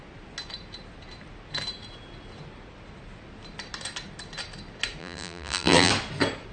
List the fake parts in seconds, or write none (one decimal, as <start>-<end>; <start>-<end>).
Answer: 5.0-5.9